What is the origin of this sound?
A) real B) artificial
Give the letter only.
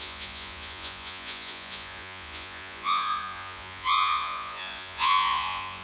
B